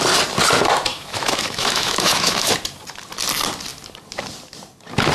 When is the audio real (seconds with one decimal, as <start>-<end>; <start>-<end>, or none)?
0.0-0.9; 2.5-5.1